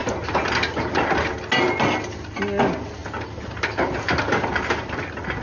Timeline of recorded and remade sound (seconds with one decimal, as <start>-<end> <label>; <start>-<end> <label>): 0.0-5.4 recorded